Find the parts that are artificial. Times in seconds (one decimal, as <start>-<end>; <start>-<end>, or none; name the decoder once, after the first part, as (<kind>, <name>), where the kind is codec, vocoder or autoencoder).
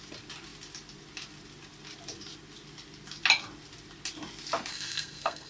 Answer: 4.7-5.5 (codec, SNAC)